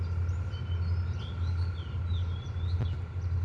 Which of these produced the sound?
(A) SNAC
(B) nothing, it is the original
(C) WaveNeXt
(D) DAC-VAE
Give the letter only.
B